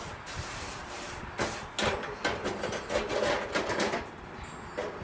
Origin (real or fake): real